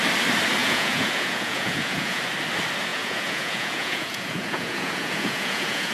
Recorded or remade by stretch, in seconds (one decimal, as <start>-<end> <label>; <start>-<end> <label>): 0.0-0.6 recorded; 0.6-2.2 remade; 2.2-2.9 recorded; 2.9-5.9 remade